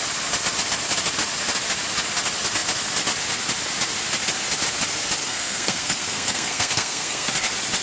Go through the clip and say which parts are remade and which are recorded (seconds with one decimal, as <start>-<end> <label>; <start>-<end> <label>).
0.0-5.2 recorded; 5.2-7.3 remade; 7.3-7.8 recorded